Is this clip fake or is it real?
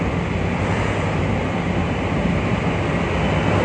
real